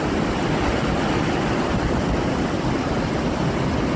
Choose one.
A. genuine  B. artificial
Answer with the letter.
A